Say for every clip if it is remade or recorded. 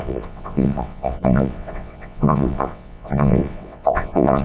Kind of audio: remade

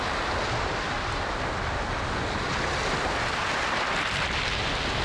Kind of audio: recorded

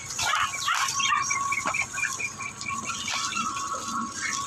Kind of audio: recorded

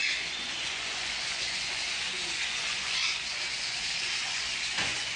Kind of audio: remade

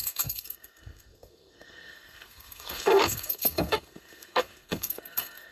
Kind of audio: remade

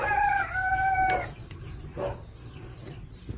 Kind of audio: recorded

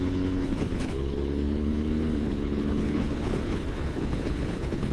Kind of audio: remade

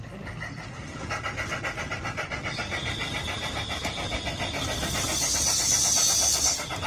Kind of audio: recorded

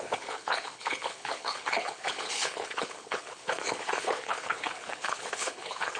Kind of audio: remade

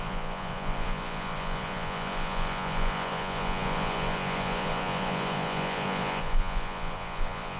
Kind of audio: remade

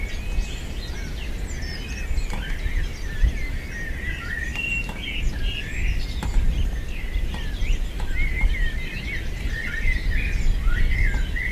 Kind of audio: recorded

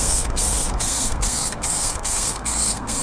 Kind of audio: remade